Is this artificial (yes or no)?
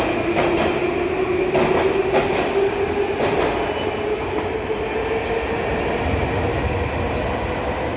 no